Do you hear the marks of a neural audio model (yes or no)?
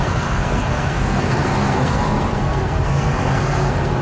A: yes